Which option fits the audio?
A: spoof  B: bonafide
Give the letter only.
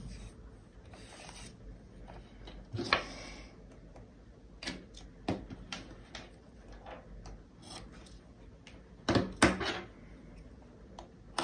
B